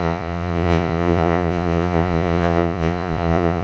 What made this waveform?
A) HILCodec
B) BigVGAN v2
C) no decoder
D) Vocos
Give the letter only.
D